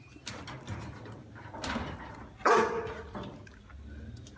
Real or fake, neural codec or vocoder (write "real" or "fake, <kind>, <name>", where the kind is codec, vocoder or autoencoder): real